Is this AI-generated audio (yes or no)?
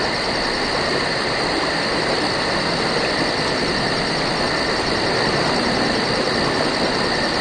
no